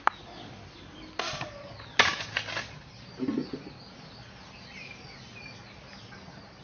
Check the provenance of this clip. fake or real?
real